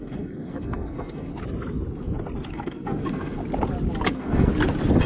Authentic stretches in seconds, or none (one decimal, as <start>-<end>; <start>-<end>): 1.3-2.5; 3.4-4.1; 4.5-5.1